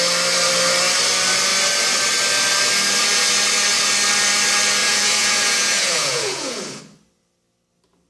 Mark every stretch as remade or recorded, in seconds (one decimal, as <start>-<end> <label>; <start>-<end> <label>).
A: 0.0-4.8 recorded; 4.8-6.8 remade; 6.8-8.1 recorded